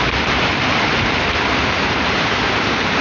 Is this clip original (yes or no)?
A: no